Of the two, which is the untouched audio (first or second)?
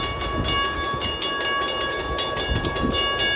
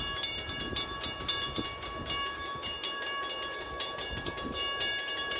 first